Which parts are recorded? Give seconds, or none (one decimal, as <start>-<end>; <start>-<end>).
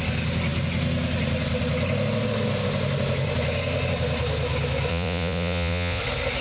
0.0-4.9; 6.0-6.4